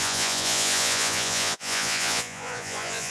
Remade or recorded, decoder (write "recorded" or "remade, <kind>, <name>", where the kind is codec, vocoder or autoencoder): remade, vocoder, Vocos